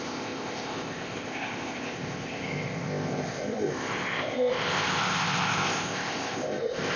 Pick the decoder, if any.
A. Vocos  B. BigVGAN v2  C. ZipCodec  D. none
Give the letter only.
C